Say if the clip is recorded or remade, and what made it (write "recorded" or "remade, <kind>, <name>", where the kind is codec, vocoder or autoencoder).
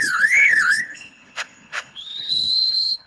remade, codec, HILCodec